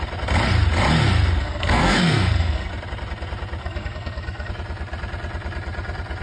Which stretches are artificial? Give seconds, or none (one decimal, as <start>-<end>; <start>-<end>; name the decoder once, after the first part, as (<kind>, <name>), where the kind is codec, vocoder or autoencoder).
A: 1.4-2.7 (codec, SNAC); 3.6-4.5